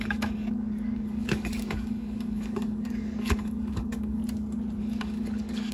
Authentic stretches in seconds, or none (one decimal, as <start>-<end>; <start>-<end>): 4.2-4.8